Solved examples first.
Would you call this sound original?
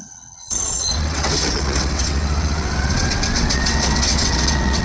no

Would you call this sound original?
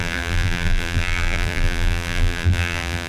no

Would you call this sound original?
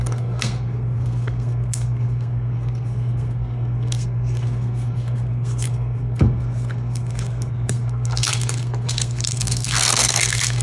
no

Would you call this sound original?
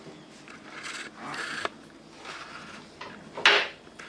yes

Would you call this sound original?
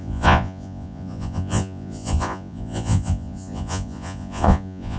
no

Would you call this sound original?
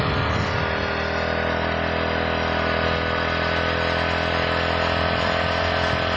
yes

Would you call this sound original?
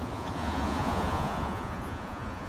no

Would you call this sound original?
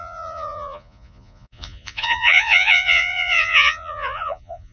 no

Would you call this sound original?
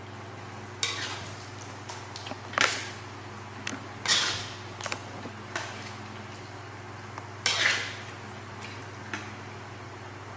yes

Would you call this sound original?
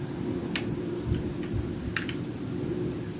yes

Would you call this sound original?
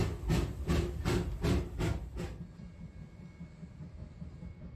yes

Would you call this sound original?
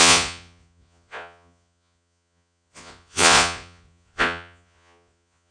no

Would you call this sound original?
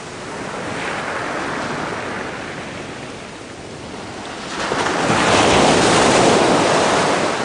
yes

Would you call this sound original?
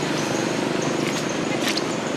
yes